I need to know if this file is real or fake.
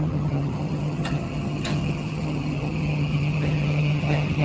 fake